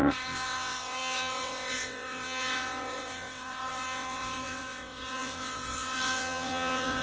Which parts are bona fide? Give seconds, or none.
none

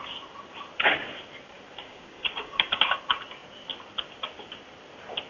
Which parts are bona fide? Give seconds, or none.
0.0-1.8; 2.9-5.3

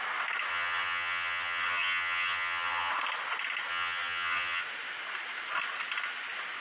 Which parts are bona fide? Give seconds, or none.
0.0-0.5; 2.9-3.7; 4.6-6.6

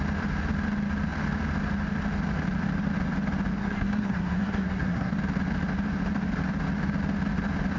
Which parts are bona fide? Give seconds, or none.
0.0-3.6; 5.1-7.8